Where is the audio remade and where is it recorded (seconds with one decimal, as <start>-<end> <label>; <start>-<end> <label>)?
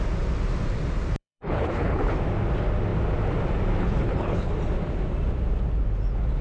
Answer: 0.0-1.2 recorded; 1.2-2.2 remade; 2.2-3.8 recorded; 3.8-4.5 remade; 4.5-6.4 recorded